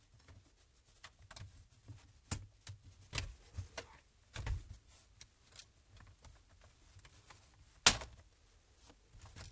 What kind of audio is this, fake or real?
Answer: real